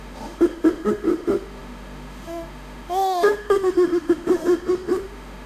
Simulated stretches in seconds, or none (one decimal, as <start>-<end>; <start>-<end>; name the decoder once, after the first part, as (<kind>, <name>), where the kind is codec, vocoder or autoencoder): 0.0-5.5 (autoencoder, DAC-VAE)